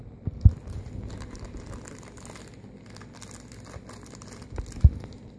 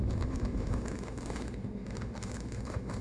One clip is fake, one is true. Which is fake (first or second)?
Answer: second